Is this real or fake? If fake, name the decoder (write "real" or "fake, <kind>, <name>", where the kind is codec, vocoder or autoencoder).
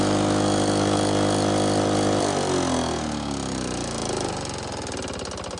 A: real